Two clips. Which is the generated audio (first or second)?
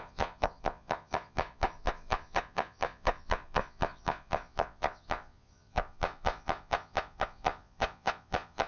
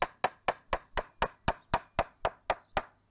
first